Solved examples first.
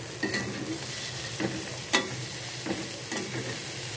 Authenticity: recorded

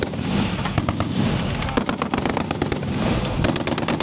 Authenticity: recorded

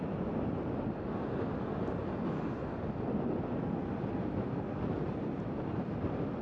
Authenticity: recorded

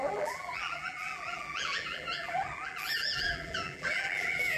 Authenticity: remade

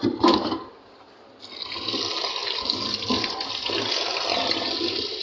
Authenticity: recorded